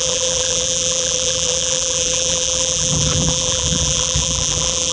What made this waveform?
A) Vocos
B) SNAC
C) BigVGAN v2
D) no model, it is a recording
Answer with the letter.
C